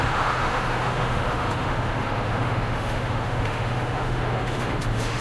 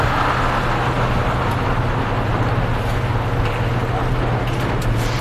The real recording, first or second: second